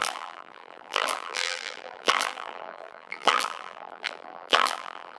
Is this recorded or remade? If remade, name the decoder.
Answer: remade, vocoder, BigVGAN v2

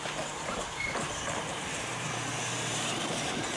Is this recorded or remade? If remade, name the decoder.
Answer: remade, vocoder, BigVGAN v2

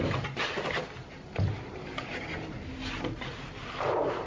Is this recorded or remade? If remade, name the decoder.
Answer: remade, vocoder, BigVGAN v2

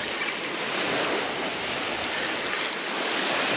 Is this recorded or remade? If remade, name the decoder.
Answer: recorded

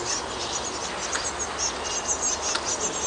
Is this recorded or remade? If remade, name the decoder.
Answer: recorded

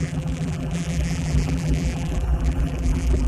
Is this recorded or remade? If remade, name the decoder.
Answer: remade, vocoder, BigVGAN v2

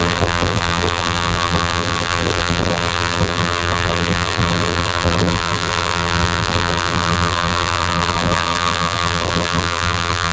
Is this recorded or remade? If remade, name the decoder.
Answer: remade, vocoder, BigVGAN v2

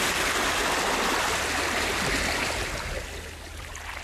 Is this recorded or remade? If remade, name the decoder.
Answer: recorded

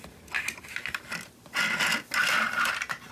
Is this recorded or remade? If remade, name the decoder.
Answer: recorded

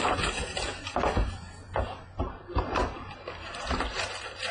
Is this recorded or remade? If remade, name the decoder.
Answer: remade, vocoder, BigVGAN v2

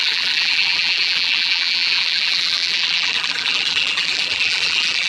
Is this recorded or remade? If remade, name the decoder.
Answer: remade, vocoder, BigVGAN v2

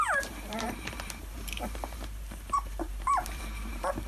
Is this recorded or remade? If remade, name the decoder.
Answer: remade, vocoder, BigVGAN v2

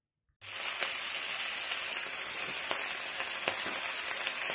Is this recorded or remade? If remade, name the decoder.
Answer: recorded